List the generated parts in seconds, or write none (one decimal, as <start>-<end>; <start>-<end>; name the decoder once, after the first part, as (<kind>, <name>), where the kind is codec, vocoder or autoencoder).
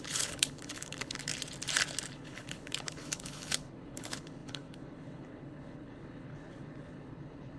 0.0-1.3 (codec, HILCodec); 2.1-7.6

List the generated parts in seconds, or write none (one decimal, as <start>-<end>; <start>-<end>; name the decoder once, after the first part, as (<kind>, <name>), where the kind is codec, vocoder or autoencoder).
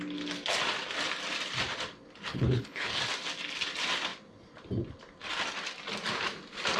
2.3-3.0 (codec, HILCodec)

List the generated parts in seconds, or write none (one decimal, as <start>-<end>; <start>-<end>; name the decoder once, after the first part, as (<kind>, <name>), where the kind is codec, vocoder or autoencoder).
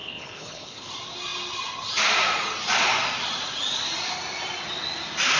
0.0-0.9 (codec, HILCodec)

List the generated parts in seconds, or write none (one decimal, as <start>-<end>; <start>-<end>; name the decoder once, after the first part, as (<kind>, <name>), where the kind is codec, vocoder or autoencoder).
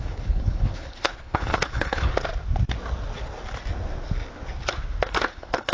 0.0-2.1 (codec, HILCodec); 5.3-5.7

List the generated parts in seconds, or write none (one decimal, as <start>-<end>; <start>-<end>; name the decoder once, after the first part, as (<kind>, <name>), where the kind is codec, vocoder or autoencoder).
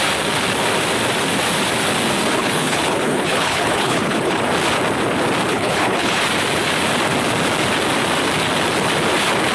2.4-4.4 (codec, HILCodec); 5.5-6.2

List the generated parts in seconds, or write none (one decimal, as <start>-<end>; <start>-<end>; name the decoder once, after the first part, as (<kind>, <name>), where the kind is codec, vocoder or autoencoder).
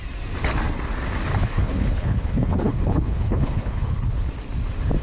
1.3-4.3 (codec, HILCodec)